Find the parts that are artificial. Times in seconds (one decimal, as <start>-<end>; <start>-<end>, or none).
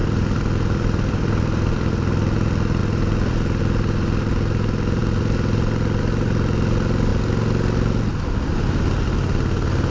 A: 0.0-1.9; 2.8-3.6